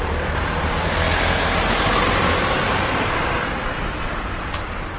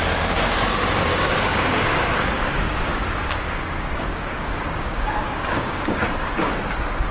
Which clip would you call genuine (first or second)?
first